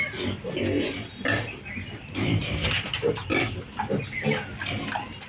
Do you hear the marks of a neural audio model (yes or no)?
yes